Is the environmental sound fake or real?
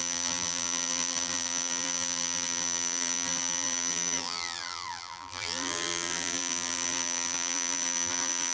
fake